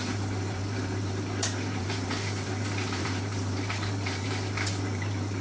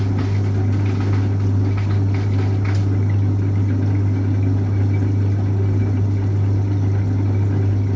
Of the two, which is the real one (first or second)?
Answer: second